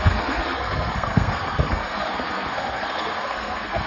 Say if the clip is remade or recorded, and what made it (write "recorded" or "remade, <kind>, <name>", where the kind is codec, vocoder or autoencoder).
remade, codec, SNAC